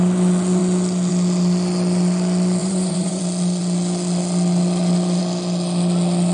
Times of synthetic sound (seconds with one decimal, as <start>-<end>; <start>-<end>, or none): 2.6-3.2